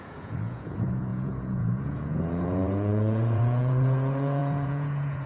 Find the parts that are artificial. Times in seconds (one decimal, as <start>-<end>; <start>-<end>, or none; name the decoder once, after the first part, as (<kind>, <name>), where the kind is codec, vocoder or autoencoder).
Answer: 0.0-5.3 (vocoder, Vocos)